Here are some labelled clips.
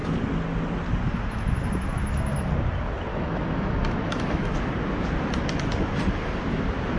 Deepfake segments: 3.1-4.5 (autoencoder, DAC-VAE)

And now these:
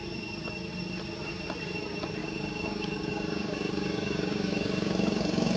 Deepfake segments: 2.2-5.6 (codec, DAC)

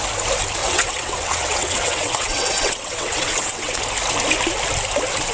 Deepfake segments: 0.6-3.8 (vocoder, WaveNeXt)

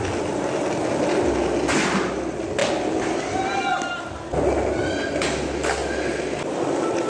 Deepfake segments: none

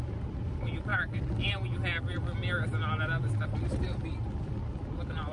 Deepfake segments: none